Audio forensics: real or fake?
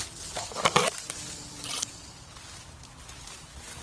real